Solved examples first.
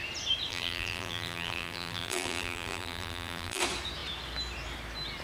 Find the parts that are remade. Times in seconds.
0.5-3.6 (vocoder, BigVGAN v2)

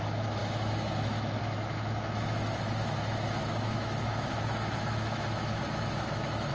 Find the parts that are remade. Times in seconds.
0.0-6.5 (autoencoder, DAC-VAE)

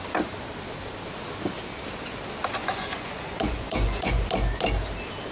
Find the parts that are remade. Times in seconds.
2.6-4.3 (vocoder, Vocos)

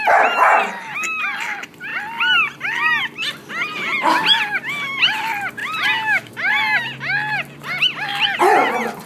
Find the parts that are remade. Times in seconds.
none

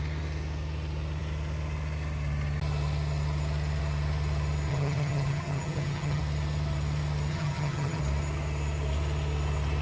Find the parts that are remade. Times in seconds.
4.7-6.2 (vocoder, HiFi-GAN); 7.3-8.0

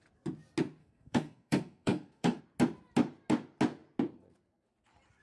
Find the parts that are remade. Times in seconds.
0.8-2.4 (codec, SNAC)

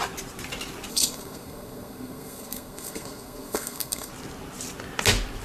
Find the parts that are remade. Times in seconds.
0.9-4.1 (codec, SNAC)